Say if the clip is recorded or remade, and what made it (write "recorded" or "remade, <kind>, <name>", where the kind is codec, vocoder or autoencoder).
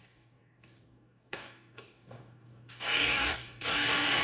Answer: remade, codec, DAC